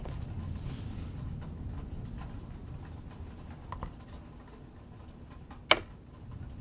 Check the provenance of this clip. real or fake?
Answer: real